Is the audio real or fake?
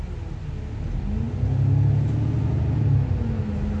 real